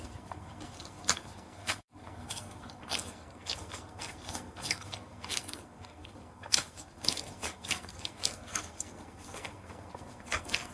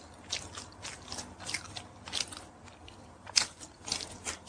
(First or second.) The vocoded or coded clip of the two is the first